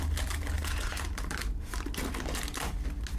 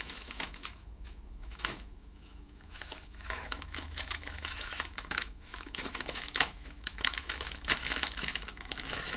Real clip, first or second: first